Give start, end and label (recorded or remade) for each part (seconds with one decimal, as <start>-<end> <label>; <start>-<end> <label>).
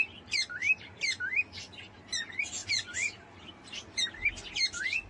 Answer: 0.0-5.1 recorded